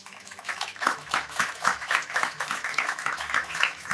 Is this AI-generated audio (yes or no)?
yes